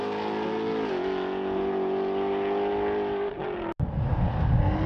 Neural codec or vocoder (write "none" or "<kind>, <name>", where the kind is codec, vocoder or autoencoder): none